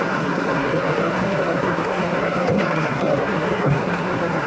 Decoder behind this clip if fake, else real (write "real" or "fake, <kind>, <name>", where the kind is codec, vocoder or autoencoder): fake, codec, SNAC